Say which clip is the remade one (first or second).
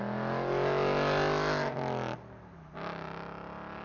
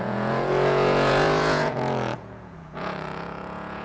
second